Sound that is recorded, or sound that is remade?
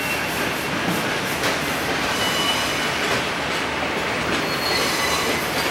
recorded